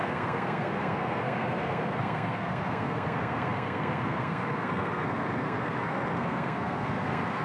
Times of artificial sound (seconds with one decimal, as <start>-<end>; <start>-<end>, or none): 0.0-7.4